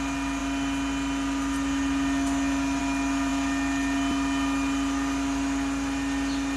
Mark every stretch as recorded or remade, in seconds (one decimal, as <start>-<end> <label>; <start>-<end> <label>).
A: 0.0-6.6 recorded